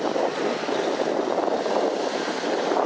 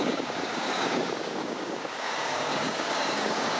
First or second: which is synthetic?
second